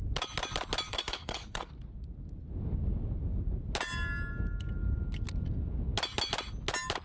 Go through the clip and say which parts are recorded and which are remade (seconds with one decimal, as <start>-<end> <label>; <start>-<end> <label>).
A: 0.0-0.9 recorded; 0.9-1.7 remade; 1.7-7.0 recorded